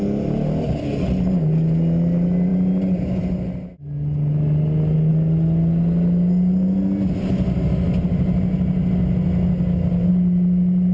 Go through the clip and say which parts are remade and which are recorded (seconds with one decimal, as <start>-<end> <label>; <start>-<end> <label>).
0.0-10.9 recorded